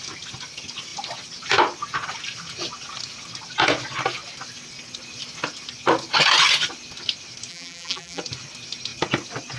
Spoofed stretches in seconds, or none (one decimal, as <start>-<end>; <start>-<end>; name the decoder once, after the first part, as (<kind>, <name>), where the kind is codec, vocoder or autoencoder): 7.5-8.2 (vocoder, BigVGAN v2)